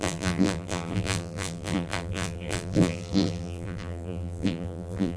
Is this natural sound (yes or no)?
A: no